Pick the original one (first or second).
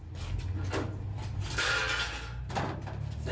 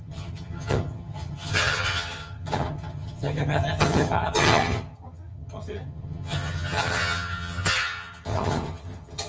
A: first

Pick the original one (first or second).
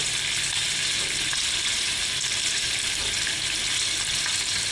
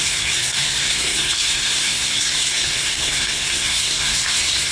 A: first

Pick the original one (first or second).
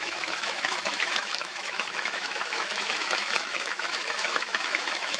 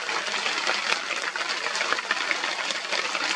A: second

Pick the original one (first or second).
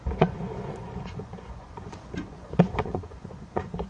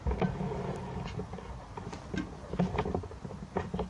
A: second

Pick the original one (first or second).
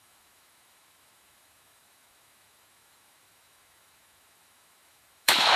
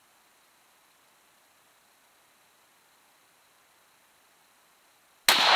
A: second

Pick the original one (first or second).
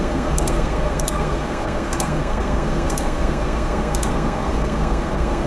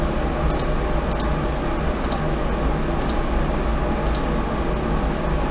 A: second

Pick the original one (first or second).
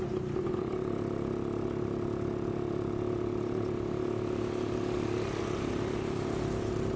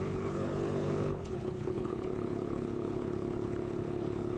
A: first